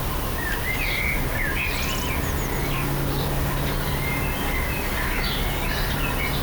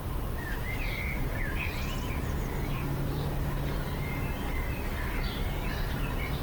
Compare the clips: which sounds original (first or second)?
first